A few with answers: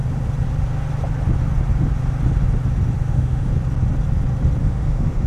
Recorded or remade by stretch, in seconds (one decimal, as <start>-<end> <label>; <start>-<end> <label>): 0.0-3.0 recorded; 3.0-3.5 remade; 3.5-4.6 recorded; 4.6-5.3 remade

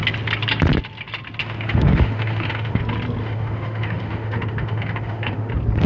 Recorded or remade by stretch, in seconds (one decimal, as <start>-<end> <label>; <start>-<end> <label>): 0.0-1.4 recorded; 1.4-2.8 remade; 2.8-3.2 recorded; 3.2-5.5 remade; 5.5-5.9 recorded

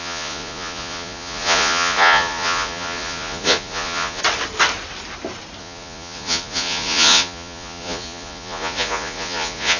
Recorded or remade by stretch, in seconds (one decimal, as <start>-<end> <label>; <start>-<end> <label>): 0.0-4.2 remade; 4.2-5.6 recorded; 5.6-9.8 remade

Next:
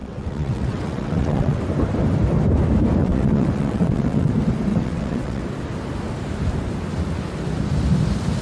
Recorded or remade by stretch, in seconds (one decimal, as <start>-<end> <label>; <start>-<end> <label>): 0.0-1.6 remade; 1.6-3.0 recorded; 3.0-4.3 remade; 4.3-4.7 recorded; 4.7-5.4 remade; 5.4-8.4 recorded

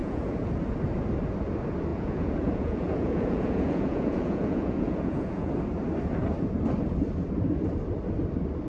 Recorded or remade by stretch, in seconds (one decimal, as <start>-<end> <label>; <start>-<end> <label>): 0.0-0.5 remade; 0.5-1.9 recorded; 1.9-5.5 remade; 5.5-8.7 recorded